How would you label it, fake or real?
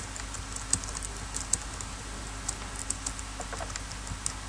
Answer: real